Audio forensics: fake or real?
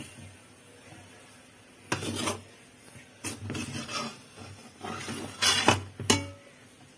real